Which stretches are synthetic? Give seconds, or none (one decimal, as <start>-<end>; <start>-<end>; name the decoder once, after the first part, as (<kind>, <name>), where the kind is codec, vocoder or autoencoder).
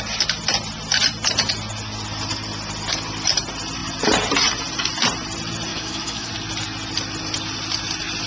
5.7-6.3 (autoencoder, DAC-VAE)